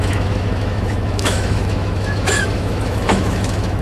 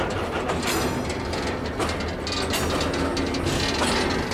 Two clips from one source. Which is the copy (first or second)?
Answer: first